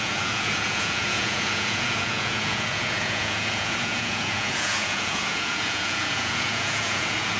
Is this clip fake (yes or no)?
yes